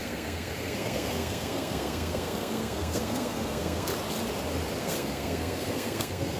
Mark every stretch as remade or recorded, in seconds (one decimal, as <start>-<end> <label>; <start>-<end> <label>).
0.0-3.9 remade; 3.9-4.8 recorded; 4.8-6.4 remade